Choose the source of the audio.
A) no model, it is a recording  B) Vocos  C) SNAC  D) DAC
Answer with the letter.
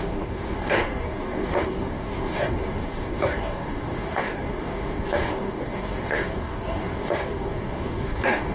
D